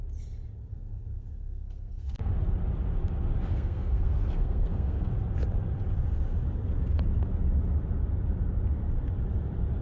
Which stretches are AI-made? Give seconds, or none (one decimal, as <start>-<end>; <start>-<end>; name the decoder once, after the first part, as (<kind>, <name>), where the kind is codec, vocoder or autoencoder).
0.7-2.3 (codec, SNAC); 3.5-5.1